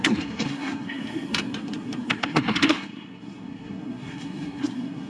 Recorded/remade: remade